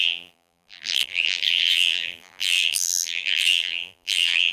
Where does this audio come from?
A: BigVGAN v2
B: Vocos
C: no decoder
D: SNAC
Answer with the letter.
A